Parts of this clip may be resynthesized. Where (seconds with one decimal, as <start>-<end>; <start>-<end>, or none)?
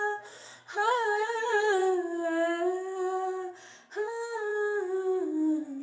0.0-1.8; 4.0-4.5